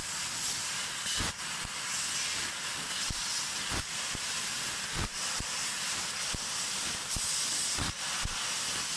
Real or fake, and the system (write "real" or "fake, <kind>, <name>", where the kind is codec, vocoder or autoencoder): real